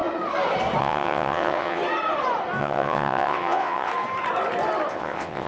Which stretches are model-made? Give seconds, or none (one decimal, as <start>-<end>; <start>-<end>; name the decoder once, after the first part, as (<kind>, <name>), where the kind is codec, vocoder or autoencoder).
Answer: 0.8-1.8 (vocoder, WaveNeXt); 2.6-3.9; 4.9-5.5